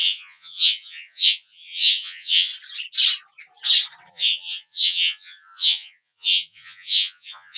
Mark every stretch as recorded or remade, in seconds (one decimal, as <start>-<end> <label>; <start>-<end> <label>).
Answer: 0.0-2.5 remade; 2.5-4.1 recorded; 4.1-7.6 remade